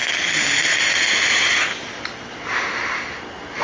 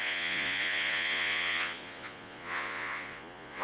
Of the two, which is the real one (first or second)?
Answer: first